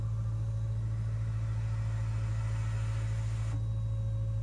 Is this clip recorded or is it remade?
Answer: recorded